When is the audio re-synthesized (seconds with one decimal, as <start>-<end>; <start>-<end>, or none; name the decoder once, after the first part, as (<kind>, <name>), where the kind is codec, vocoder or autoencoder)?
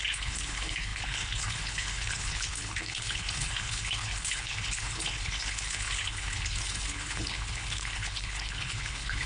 0.0-9.3 (codec, HILCodec)